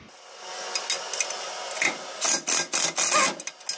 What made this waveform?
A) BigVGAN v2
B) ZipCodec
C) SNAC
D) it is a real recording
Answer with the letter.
D